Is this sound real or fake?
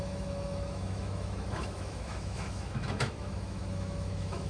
fake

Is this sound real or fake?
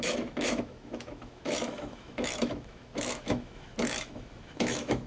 fake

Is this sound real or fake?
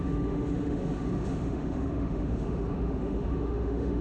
fake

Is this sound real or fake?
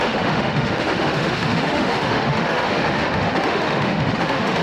fake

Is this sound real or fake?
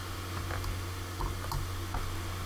real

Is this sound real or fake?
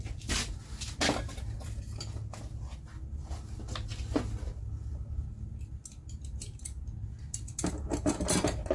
real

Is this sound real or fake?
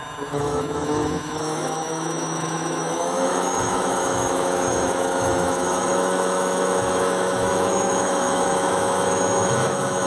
fake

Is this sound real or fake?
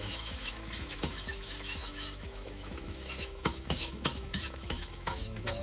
fake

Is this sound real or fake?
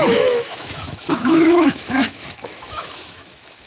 fake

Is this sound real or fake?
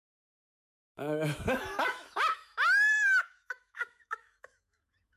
fake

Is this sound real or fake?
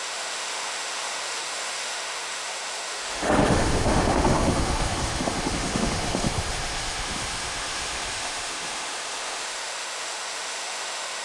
fake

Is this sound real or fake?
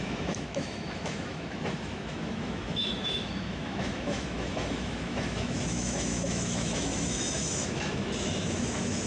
fake